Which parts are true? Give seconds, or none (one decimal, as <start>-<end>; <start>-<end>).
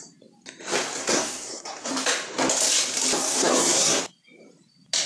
0.0-1.0; 1.9-3.2; 4.0-5.1